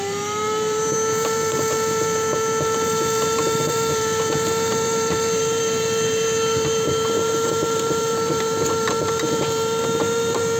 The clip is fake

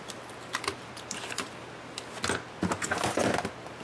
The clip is real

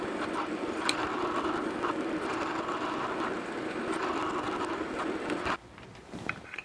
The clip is fake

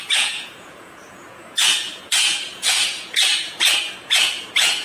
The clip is fake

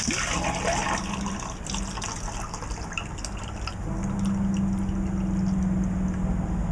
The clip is real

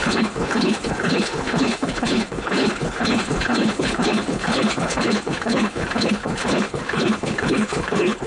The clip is fake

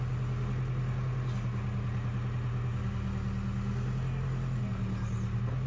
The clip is real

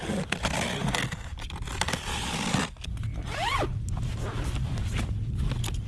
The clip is real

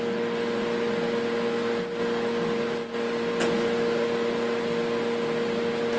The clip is real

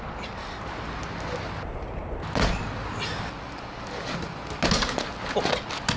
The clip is real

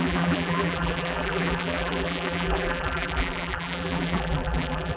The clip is fake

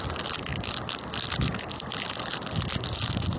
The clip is real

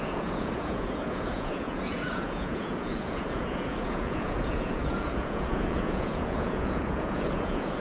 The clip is fake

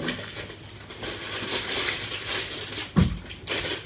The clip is real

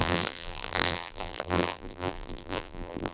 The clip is fake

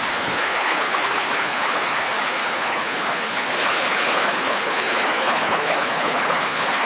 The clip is fake